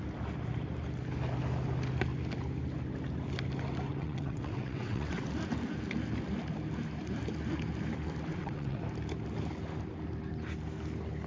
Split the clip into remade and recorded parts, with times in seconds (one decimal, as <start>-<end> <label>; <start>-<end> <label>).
0.0-3.9 recorded; 3.9-5.3 remade; 5.3-8.3 recorded; 8.3-8.8 remade; 8.8-11.3 recorded